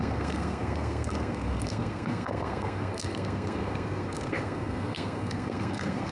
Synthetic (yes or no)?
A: yes